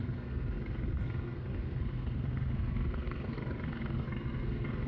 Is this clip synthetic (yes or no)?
yes